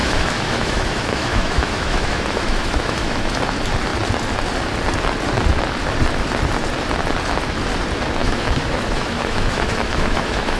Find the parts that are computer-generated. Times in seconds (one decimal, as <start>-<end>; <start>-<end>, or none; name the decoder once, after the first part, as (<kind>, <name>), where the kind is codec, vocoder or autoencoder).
0.0-3.4 (autoencoder, DAC-VAE); 8.2-10.6